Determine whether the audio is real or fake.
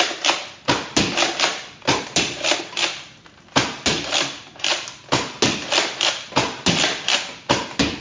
real